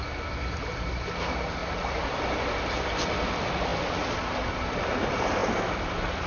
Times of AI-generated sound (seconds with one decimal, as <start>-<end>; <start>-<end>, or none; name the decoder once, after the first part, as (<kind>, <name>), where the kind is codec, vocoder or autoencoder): none